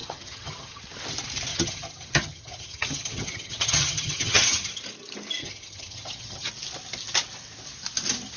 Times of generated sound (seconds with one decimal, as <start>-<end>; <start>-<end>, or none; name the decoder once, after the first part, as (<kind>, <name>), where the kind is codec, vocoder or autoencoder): 0.0-0.8 (vocoder, HiFi-GAN); 1.5-4.7; 5.4-6.5